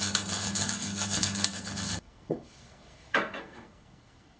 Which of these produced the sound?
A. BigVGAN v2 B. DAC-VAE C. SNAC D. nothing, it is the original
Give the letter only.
C